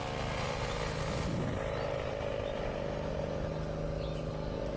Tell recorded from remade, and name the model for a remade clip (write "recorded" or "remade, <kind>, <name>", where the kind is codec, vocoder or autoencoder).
recorded